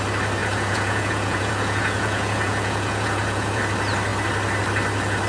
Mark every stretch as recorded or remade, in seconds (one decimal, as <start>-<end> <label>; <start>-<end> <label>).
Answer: 0.0-0.4 recorded; 0.4-3.6 remade; 3.6-5.3 recorded